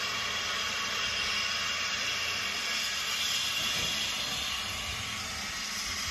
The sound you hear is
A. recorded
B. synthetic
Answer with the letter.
A